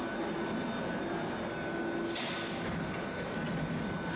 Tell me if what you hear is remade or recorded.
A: recorded